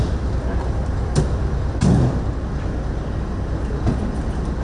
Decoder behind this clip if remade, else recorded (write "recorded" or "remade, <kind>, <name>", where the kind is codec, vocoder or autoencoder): recorded